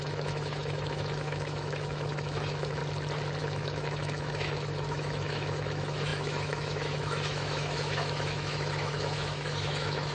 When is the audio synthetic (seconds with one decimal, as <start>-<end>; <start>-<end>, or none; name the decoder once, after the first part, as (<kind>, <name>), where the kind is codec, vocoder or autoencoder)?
0.0-2.8 (autoencoder, DAC-VAE); 3.4-10.1